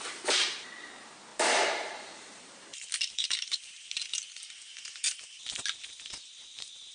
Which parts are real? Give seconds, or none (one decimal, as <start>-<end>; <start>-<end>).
none